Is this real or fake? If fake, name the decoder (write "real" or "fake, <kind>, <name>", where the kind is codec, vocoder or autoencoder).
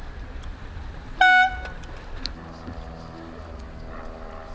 real